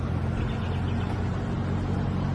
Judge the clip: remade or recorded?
recorded